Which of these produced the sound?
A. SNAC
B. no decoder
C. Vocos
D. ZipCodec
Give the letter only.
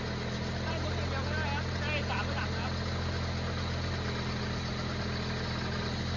B